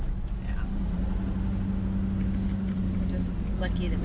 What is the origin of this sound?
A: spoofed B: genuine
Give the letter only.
B